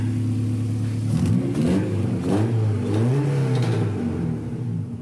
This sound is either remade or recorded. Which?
recorded